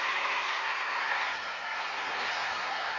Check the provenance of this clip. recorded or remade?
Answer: remade